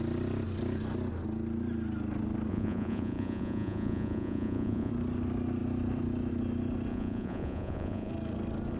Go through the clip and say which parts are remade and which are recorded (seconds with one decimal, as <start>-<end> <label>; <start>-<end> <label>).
0.0-2.5 recorded; 2.5-4.9 remade; 4.9-6.9 recorded; 6.9-8.1 remade; 8.1-8.8 recorded